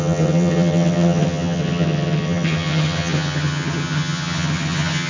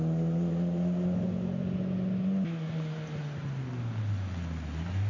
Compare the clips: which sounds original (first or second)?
second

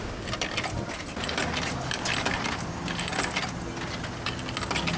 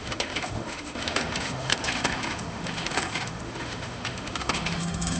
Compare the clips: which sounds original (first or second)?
first